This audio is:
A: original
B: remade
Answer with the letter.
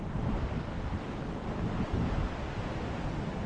A